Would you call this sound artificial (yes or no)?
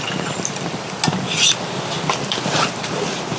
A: no